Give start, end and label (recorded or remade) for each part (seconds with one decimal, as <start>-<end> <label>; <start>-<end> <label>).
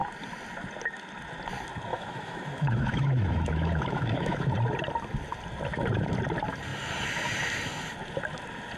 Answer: 0.0-1.9 recorded; 1.9-4.5 remade; 4.5-8.8 recorded